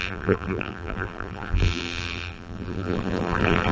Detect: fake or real fake